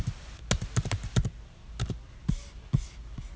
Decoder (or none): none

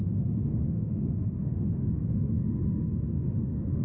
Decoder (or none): autoencoder, DAC-VAE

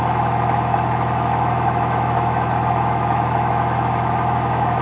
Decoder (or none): autoencoder, DAC-VAE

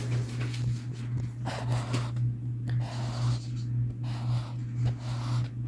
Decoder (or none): none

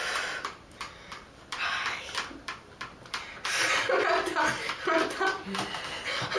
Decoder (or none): none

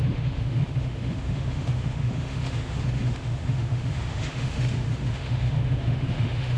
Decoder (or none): autoencoder, DAC-VAE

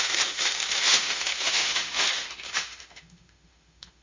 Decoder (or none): autoencoder, DAC-VAE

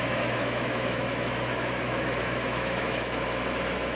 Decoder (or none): autoencoder, DAC-VAE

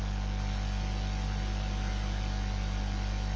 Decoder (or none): none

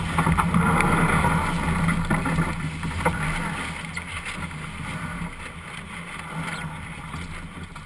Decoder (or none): none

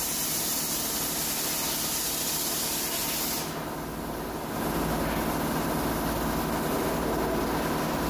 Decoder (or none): none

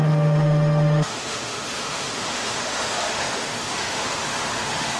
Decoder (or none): autoencoder, DAC-VAE